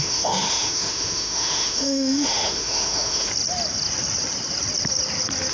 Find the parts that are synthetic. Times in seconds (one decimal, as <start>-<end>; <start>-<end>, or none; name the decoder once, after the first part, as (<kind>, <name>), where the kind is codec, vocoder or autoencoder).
0.0-3.3 (autoencoder, DAC-VAE)